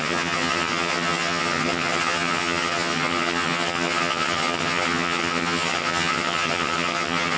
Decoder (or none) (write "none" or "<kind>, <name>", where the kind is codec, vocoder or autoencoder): vocoder, HiFi-GAN